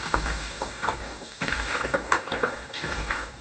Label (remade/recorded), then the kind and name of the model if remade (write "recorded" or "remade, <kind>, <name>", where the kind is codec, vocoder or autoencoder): remade, codec, DAC